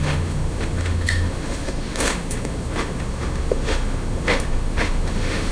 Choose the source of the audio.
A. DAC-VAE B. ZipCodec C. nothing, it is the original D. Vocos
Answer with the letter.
A